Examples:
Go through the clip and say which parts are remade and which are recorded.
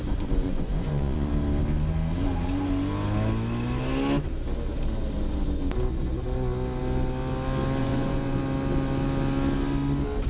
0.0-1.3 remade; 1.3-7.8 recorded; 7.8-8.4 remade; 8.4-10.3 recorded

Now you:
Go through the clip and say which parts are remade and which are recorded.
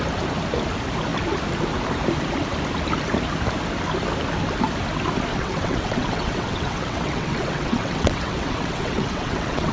0.0-5.3 recorded; 5.3-9.7 remade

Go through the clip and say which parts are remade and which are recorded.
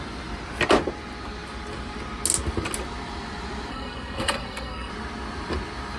0.0-3.7 recorded; 3.7-4.9 remade; 4.9-6.0 recorded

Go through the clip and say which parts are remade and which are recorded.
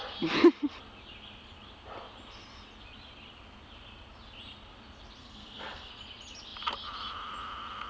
0.0-5.2 recorded; 5.2-5.9 remade; 5.9-7.9 recorded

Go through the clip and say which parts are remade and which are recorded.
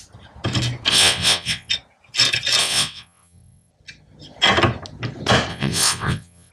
0.0-0.9 recorded; 0.9-1.7 remade; 1.7-2.6 recorded; 2.6-3.7 remade; 3.7-5.5 recorded; 5.5-6.5 remade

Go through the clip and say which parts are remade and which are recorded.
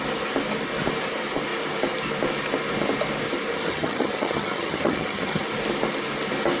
0.0-3.5 recorded; 3.5-5.4 remade; 5.4-6.6 recorded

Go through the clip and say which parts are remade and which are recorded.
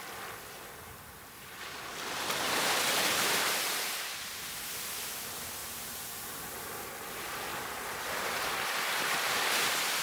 0.0-5.6 recorded; 5.6-6.2 remade; 6.2-7.5 recorded; 7.5-10.0 remade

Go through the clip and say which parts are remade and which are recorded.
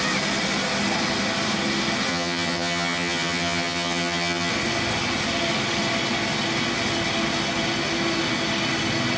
0.0-2.1 recorded; 2.1-4.5 remade; 4.5-9.2 recorded